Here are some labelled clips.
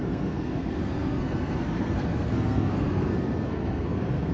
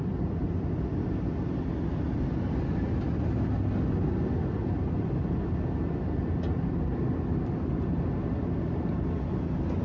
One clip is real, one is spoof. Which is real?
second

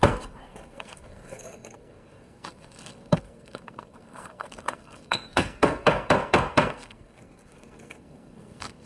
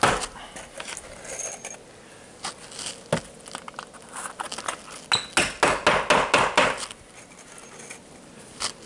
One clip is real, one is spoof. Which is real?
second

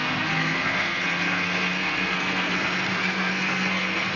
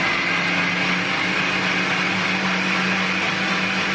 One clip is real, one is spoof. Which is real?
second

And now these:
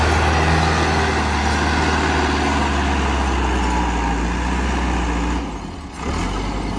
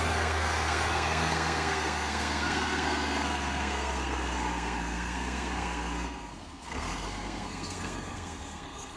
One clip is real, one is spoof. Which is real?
first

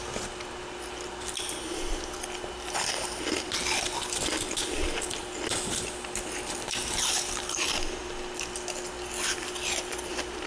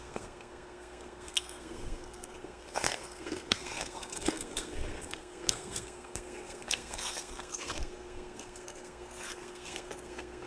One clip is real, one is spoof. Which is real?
first